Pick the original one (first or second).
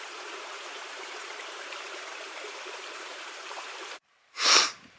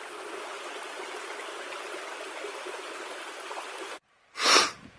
second